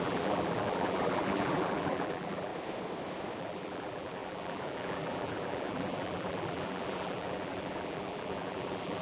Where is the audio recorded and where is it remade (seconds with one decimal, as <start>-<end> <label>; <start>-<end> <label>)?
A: 0.0-2.5 remade; 2.5-3.4 recorded; 3.4-9.0 remade